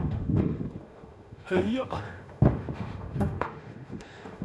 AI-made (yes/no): yes